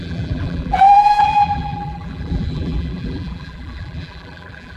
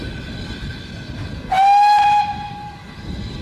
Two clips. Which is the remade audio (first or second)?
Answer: first